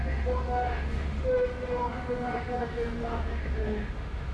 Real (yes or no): no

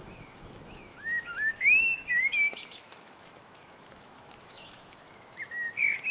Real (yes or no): no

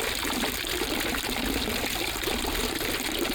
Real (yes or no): yes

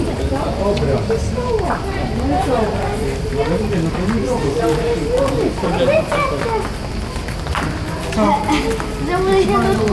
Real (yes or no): yes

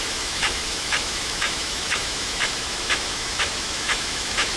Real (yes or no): no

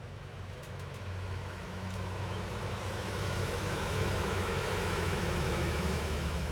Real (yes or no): no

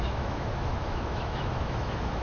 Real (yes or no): no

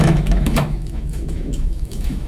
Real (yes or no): no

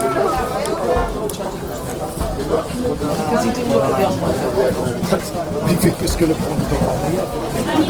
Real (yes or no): yes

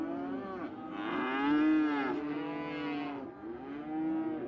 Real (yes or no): yes